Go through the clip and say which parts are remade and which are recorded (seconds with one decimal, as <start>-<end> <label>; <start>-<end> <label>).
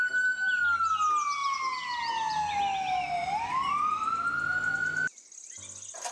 0.0-6.1 recorded